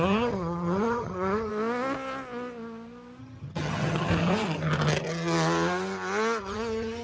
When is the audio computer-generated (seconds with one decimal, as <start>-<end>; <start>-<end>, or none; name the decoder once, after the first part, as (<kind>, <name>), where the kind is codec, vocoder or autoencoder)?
0.0-1.5 (vocoder, HiFi-GAN); 3.2-4.1; 6.4-7.0